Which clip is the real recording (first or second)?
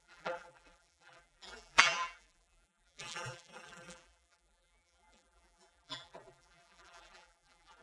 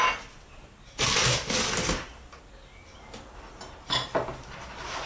second